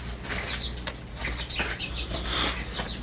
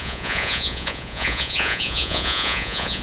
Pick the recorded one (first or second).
first